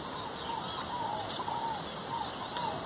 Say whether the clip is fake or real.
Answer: real